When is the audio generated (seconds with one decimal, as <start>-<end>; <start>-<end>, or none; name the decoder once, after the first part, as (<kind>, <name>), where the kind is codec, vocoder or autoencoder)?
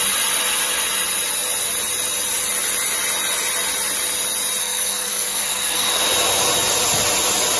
4.6-6.0 (codec, SNAC)